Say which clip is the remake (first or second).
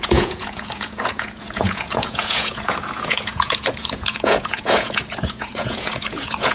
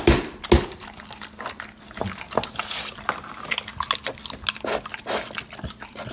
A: first